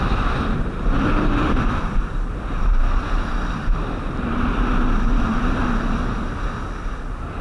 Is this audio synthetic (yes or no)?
no